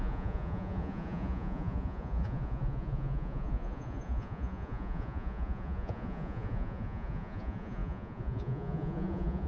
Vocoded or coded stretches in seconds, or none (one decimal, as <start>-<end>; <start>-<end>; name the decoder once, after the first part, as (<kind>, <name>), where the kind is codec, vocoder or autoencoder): 0.0-9.5 (vocoder, Vocos)